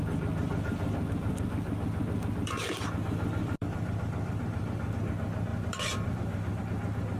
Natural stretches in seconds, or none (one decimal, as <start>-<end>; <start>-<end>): 0.0-3.4; 5.1-5.5; 6.6-7.2